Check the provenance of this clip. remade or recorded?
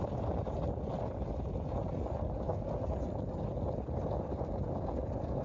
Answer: recorded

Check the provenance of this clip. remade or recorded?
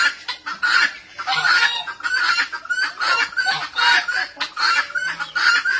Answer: recorded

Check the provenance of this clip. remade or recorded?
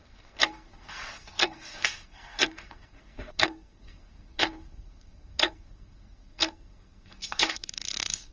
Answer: remade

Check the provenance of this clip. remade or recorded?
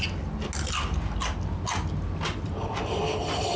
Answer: recorded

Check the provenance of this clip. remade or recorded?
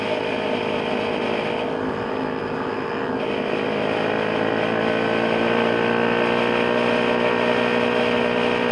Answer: recorded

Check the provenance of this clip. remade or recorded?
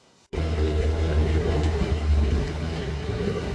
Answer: remade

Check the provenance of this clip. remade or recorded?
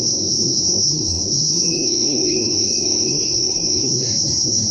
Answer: remade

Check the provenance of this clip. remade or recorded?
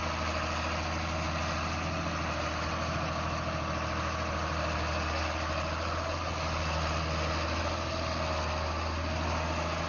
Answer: recorded